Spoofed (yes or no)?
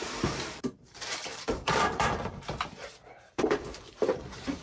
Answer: yes